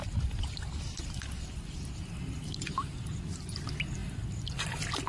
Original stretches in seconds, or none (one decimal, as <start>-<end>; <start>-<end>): 3.1-4.0; 4.5-5.1